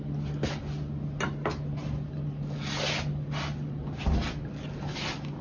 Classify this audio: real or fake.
real